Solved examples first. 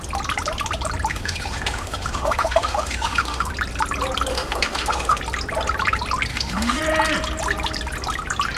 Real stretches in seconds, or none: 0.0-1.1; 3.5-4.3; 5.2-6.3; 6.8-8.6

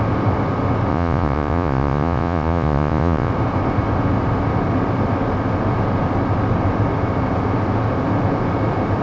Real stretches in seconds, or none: 0.0-0.9; 3.3-9.0

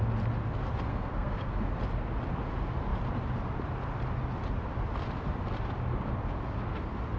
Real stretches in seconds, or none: 0.0-0.9; 1.5-7.2